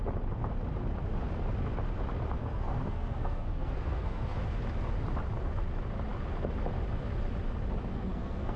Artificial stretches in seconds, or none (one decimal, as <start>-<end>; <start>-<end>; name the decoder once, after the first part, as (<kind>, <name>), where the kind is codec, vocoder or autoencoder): 2.4-4.4 (codec, SNAC); 7.9-8.6